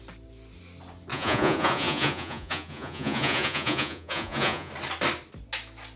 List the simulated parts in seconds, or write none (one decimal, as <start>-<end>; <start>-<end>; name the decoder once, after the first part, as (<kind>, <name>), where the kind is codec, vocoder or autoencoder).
1.1-4.7 (vocoder, Vocos)